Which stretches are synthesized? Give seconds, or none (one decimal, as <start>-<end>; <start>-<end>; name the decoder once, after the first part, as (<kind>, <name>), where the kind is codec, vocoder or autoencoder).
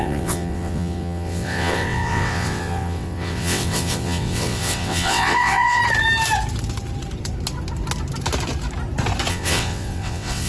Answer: 0.0-5.8 (vocoder, WaveNeXt); 9.3-10.5